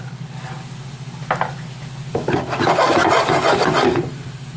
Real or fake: real